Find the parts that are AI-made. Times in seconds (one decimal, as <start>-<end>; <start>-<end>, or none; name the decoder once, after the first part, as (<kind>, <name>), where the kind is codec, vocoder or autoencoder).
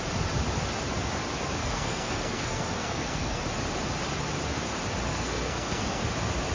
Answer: 1.6-3.4 (codec, SNAC); 5.1-6.0